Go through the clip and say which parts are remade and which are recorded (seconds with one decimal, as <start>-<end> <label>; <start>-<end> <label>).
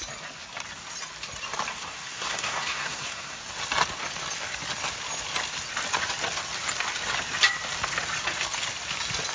0.0-1.7 recorded; 1.7-3.4 remade; 3.4-9.3 recorded